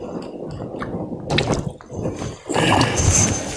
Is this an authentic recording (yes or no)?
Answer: yes